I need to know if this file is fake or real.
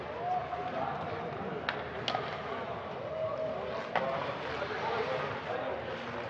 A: real